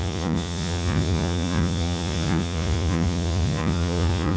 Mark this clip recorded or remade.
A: remade